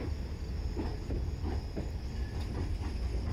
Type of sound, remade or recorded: recorded